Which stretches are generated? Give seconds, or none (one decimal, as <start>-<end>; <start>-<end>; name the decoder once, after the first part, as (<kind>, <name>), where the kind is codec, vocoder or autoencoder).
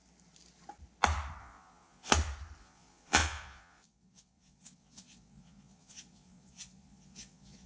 1.4-2.1 (vocoder, Vocos); 2.6-7.7